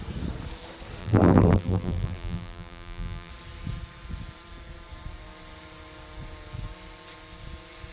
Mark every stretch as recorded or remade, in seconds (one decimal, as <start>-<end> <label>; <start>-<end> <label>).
0.0-1.0 recorded; 1.0-3.3 remade; 3.3-7.9 recorded